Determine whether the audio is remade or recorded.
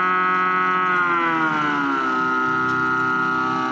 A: recorded